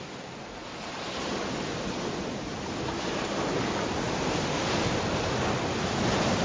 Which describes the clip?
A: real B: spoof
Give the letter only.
A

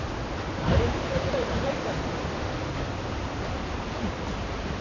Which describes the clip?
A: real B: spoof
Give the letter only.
B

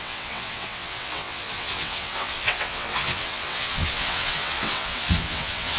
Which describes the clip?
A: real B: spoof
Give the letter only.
B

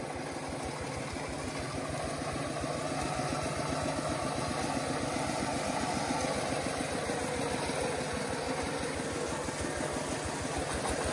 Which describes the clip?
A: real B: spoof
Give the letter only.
A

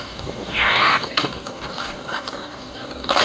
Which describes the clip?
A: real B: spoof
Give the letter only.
B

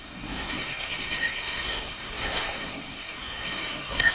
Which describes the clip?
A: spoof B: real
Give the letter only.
A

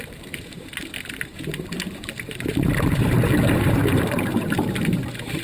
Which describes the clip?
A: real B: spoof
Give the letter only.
B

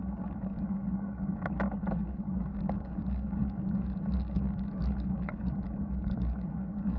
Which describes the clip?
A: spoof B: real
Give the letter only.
A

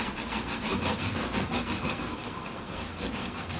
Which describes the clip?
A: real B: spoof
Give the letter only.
B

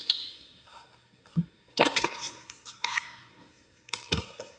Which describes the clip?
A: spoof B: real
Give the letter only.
A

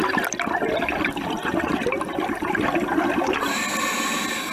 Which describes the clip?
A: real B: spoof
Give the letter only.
A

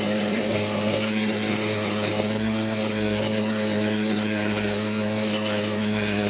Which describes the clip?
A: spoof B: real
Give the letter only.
A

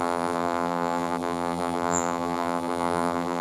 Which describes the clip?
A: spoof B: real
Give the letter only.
A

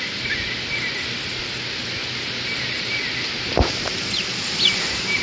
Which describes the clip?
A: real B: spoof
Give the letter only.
A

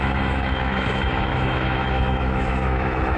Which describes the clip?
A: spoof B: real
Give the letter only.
A